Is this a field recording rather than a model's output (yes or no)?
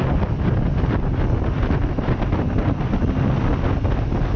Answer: yes